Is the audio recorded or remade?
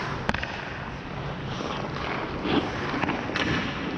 recorded